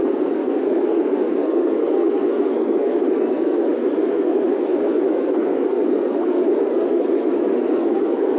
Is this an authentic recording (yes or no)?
no